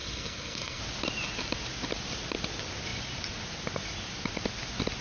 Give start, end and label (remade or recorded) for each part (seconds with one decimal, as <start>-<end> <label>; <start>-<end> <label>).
0.0-0.8 remade; 0.8-5.0 recorded